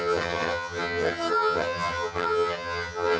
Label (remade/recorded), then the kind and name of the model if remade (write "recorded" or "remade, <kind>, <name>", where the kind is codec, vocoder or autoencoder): remade, vocoder, HiFi-GAN